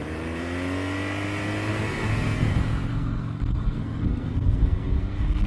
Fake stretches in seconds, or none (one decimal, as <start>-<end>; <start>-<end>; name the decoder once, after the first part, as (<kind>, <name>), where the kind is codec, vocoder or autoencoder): 1.7-2.5 (codec, SNAC); 2.9-5.5